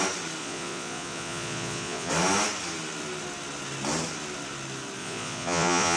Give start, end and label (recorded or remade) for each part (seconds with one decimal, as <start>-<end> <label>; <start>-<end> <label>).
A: 0.0-0.4 recorded; 0.4-2.1 remade; 2.1-5.0 recorded; 5.0-6.0 remade